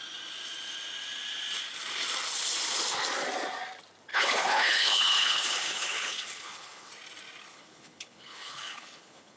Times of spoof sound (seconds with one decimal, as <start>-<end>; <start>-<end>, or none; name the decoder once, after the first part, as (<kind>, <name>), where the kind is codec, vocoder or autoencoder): 4.1-6.9 (codec, HILCodec); 7.5-9.4